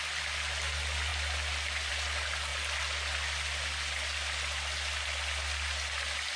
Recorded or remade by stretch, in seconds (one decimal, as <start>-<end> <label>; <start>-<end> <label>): 0.0-6.4 recorded